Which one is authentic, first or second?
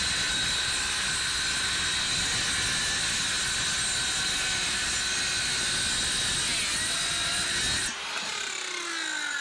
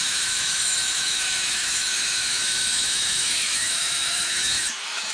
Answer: first